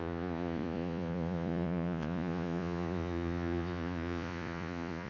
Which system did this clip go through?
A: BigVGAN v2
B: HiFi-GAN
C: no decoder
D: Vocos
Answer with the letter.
D